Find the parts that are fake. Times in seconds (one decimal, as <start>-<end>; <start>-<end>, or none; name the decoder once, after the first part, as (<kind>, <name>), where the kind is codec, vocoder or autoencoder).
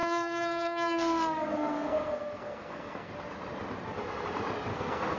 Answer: 0.0-3.1 (codec, SNAC); 4.7-5.2